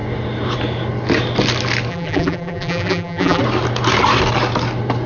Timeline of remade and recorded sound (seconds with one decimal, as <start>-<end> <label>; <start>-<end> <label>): 0.0-1.9 recorded; 1.9-3.4 remade; 3.4-5.1 recorded